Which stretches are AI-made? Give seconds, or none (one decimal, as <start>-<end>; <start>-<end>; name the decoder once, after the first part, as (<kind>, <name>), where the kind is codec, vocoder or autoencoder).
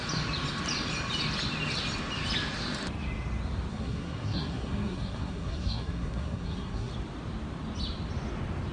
3.7-6.9 (codec, SNAC)